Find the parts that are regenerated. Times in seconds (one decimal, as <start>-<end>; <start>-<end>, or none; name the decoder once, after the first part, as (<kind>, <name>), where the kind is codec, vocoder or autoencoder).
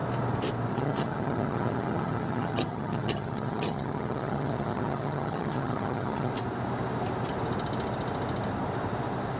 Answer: 0.7-6.3 (vocoder, HiFi-GAN)